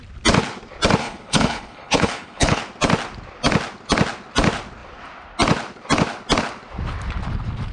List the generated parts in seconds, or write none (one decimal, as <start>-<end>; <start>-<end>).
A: 1.0-2.6